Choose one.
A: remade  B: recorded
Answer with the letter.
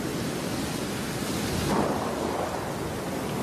B